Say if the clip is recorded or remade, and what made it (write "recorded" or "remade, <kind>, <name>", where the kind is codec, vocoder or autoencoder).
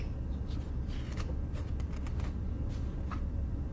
recorded